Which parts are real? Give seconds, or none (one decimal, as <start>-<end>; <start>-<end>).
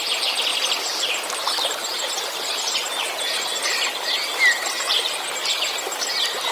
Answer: 0.0-0.5; 4.4-6.5